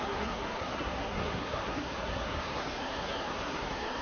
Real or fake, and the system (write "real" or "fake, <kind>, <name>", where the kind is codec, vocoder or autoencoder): fake, codec, SNAC